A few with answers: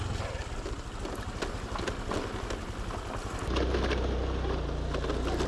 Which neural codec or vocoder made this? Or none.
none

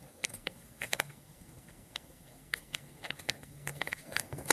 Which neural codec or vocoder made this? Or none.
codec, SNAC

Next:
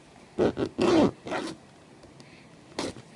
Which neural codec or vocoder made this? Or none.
none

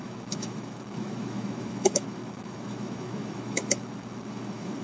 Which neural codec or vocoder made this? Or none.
autoencoder, DAC-VAE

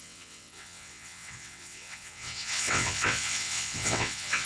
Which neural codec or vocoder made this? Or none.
vocoder, WaveNeXt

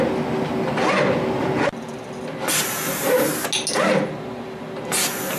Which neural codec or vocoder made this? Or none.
none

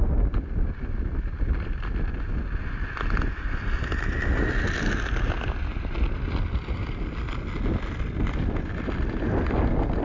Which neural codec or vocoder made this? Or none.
none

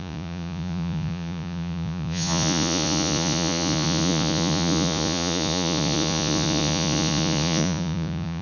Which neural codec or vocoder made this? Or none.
vocoder, Vocos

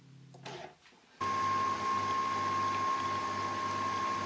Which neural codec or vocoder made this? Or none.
none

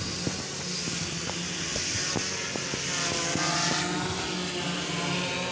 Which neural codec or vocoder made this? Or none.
none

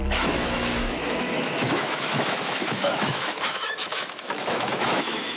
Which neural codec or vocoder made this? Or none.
autoencoder, DAC-VAE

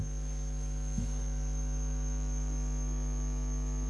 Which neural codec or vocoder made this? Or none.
autoencoder, DAC-VAE